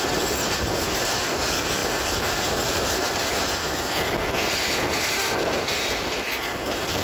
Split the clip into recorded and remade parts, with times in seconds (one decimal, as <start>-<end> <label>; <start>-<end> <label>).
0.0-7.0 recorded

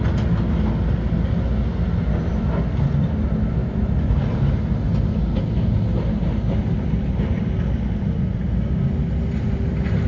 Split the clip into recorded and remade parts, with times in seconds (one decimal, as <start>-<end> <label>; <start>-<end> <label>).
0.0-10.1 recorded

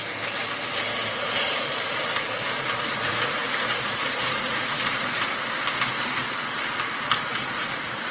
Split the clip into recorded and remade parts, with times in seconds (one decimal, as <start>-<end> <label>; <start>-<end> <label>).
0.0-2.9 recorded; 2.9-5.3 remade; 5.3-7.3 recorded; 7.3-8.1 remade